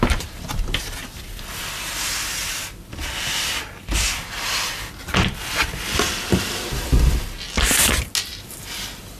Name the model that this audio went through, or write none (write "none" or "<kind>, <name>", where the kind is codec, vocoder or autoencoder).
none